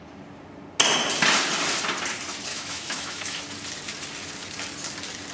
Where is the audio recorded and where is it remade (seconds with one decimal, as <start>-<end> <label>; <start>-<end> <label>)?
0.0-2.5 recorded; 2.5-3.4 remade; 3.4-5.3 recorded